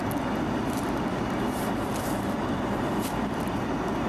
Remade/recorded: remade